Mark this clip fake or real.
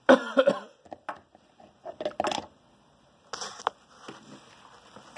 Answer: real